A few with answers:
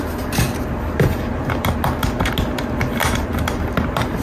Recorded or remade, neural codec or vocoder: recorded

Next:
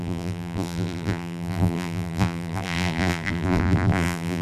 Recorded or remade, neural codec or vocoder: remade, vocoder, BigVGAN v2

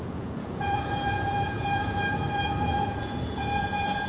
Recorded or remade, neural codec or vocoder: remade, vocoder, Vocos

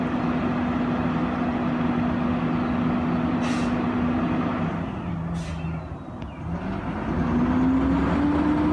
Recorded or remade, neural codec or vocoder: recorded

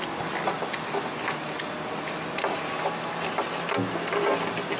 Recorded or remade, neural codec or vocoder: recorded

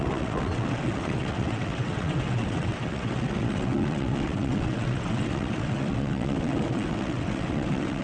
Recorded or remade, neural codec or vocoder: remade, vocoder, WaveNeXt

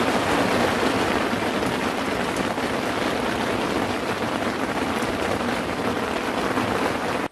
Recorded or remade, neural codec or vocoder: recorded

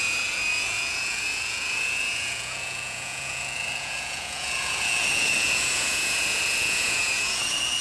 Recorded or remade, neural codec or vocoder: remade, vocoder, Vocos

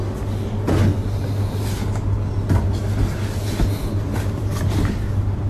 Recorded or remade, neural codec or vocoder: recorded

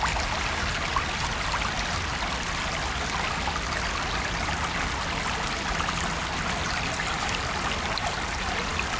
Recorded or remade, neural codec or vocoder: recorded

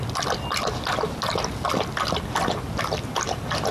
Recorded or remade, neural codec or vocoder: recorded